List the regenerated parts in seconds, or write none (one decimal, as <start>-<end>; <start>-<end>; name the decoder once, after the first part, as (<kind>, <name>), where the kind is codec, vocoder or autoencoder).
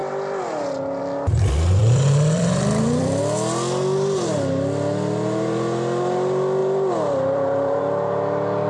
1.8-3.2 (vocoder, BigVGAN v2); 6.6-7.8